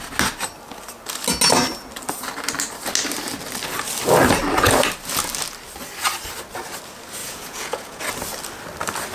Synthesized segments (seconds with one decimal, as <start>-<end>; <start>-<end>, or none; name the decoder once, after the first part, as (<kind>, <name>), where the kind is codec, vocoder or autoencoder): 7.2-8.0 (vocoder, Vocos)